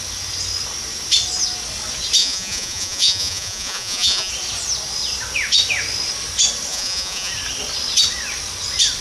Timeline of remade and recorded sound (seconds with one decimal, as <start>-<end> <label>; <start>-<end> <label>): 0.0-2.2 recorded; 2.2-4.3 remade; 4.3-6.7 recorded; 6.7-7.3 remade; 7.3-9.0 recorded